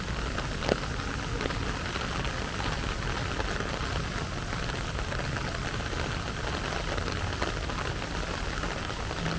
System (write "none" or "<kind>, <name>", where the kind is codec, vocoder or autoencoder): none